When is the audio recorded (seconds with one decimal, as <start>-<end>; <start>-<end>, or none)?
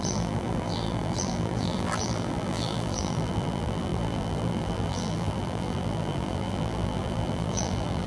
none